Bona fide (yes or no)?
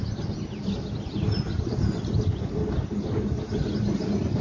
yes